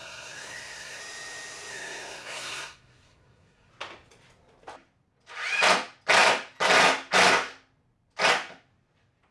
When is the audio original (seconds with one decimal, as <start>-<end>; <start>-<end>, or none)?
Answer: 1.0-1.7; 3.7-9.3